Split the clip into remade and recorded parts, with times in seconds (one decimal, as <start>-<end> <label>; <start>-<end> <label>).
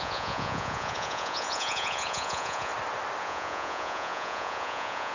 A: 0.0-2.7 remade; 2.7-3.2 recorded; 3.2-5.1 remade